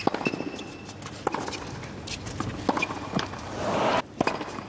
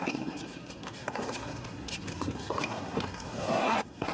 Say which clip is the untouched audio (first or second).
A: first